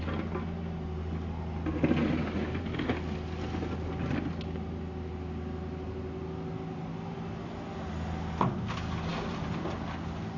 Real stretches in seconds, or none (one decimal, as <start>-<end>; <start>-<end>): 0.0-10.4